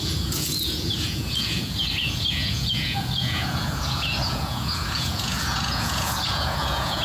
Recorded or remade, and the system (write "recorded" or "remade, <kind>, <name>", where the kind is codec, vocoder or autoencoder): remade, vocoder, Vocos